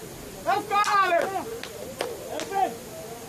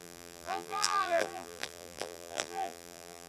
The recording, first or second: first